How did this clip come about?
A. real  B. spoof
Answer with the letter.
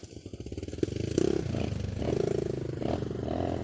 A